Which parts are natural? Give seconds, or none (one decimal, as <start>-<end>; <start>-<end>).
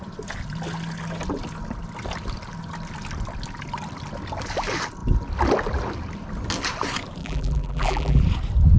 0.0-7.2; 8.2-8.8